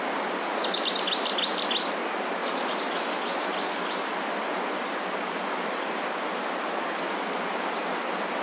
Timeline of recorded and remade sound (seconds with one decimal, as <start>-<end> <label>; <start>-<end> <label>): 0.0-8.4 recorded

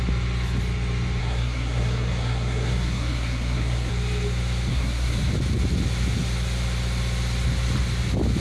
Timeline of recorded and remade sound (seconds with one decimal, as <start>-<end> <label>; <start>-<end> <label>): 0.0-1.2 recorded; 1.2-3.9 remade; 3.9-4.7 recorded; 4.7-5.3 remade; 5.3-8.4 recorded